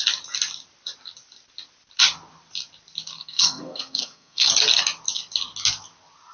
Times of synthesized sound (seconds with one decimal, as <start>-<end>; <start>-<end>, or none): 3.2-4.5

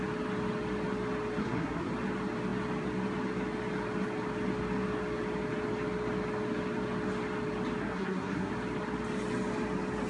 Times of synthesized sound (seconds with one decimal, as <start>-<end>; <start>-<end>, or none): 1.4-1.9; 7.8-8.5

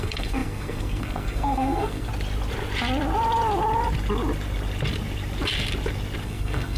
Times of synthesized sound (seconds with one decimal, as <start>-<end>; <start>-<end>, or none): 0.0-2.1; 6.2-6.8